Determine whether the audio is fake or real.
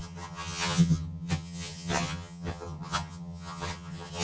fake